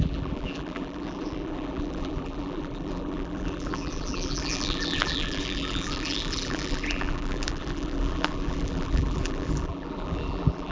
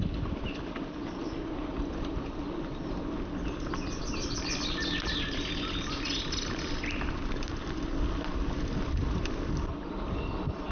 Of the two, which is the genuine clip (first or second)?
second